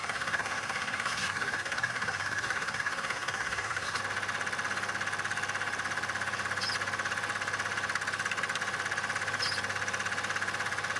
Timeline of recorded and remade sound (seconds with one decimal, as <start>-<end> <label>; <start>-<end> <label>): 0.0-4.0 remade; 4.0-11.0 recorded